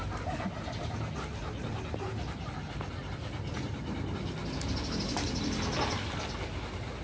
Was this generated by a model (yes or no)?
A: no